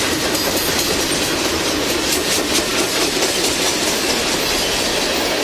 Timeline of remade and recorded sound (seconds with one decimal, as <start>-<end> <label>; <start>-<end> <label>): 0.0-5.4 recorded